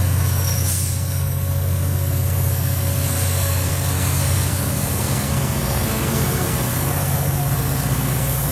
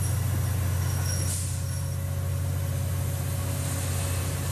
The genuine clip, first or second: second